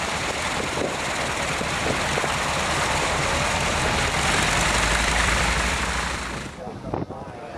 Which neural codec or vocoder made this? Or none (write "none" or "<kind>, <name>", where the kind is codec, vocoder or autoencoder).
vocoder, BigVGAN v2